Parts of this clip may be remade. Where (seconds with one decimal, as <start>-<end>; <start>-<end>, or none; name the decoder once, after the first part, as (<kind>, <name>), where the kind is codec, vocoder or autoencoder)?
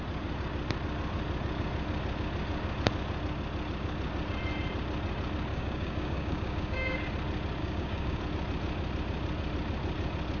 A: 5.5-7.1 (codec, DAC); 7.6-8.2